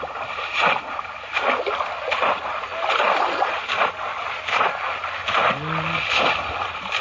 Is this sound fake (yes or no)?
no